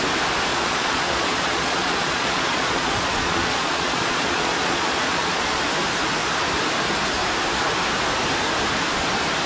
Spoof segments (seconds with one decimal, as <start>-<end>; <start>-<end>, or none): 0.5-5.6